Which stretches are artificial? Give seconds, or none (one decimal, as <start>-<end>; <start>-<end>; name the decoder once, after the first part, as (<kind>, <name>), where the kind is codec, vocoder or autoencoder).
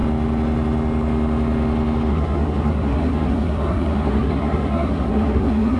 2.1-5.8 (codec, SNAC)